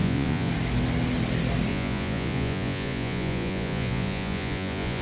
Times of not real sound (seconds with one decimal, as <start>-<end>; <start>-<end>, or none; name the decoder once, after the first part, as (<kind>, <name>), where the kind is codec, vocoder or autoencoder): 0.0-0.5 (vocoder, Vocos); 1.7-5.0